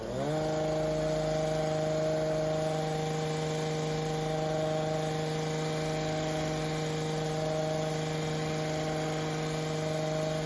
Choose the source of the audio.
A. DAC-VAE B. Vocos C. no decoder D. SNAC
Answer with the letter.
C